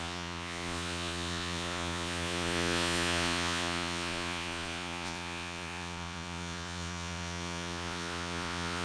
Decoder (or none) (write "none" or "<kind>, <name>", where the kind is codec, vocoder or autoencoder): vocoder, Vocos